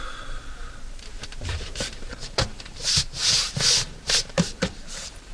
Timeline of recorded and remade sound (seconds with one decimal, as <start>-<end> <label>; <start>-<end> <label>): 0.0-0.4 recorded; 0.4-2.8 remade; 2.8-3.2 recorded; 3.2-5.3 remade